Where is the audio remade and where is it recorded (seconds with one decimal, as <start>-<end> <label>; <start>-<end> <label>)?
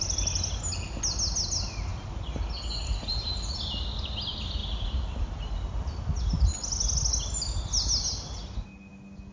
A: 0.0-9.3 recorded